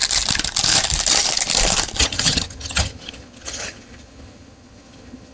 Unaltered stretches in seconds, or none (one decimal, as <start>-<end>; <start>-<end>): 0.0-2.0